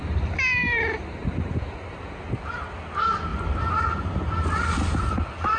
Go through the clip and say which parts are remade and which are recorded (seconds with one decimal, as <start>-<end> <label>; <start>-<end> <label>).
0.0-0.6 recorded; 0.6-2.0 remade; 2.0-3.3 recorded; 3.3-3.8 remade; 3.8-5.6 recorded